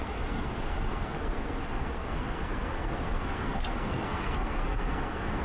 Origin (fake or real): fake